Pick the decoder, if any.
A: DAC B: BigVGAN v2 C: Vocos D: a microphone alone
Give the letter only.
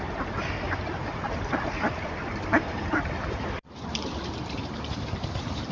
B